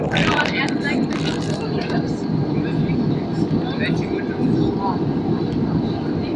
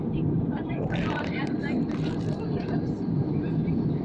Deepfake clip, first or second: second